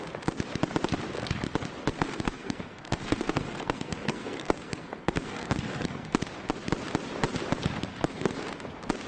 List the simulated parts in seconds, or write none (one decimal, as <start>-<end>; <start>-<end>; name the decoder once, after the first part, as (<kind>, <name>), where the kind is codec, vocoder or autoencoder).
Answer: 1.9-6.2 (codec, SNAC); 7.9-8.4